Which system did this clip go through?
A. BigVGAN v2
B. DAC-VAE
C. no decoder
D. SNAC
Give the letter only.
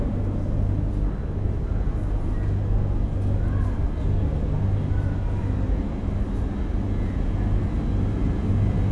C